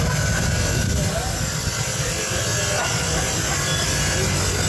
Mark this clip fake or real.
real